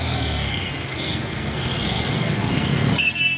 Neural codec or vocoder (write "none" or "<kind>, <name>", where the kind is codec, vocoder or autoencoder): codec, SNAC